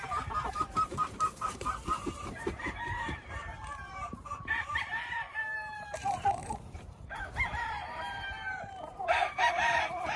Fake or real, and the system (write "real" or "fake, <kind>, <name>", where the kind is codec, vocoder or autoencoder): fake, vocoder, BigVGAN v2